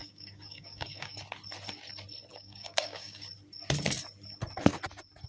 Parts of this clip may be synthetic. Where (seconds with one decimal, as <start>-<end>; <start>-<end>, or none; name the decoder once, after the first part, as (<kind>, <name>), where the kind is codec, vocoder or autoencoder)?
0.0-1.2 (codec, DAC); 2.3-3.3